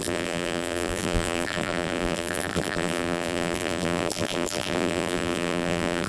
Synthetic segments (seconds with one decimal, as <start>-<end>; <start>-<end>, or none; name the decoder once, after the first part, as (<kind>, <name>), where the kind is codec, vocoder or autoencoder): 0.0-6.1 (vocoder, BigVGAN v2)